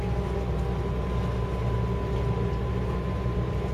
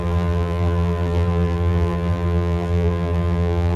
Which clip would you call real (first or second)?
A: first